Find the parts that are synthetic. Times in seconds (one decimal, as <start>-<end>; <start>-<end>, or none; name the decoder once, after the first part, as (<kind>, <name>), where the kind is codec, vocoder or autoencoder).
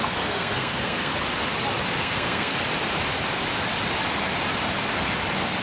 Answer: 0.0-1.1 (codec, SNAC); 2.0-2.5